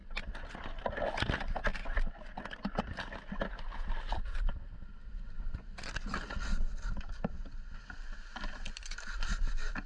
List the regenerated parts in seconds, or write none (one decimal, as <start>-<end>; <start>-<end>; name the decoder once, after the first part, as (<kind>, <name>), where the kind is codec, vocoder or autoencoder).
none